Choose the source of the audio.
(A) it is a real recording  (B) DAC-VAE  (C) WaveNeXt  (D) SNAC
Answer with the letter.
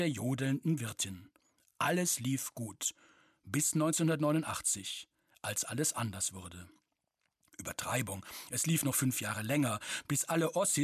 A